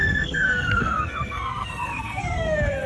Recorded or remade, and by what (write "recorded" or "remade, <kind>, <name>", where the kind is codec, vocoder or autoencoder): remade, codec, SNAC